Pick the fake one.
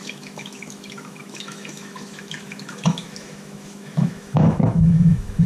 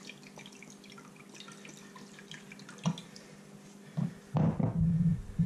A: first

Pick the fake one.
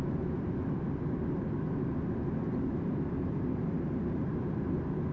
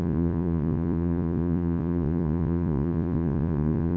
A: second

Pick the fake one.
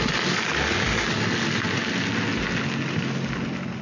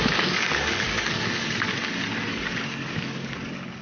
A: second